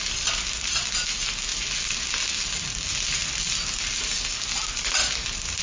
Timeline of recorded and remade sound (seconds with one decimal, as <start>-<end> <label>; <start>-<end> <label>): 0.0-5.6 recorded